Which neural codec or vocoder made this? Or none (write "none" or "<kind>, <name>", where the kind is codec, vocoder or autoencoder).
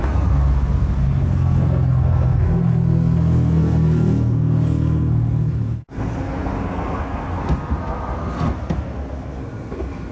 codec, SNAC